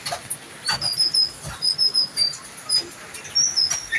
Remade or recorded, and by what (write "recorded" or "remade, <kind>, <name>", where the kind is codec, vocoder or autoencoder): recorded